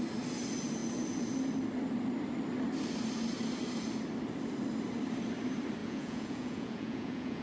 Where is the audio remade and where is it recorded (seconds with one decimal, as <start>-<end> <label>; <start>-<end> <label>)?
0.0-5.8 recorded; 5.8-7.4 remade